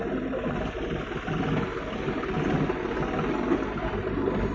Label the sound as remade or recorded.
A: recorded